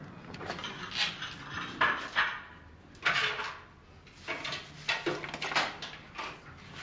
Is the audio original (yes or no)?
yes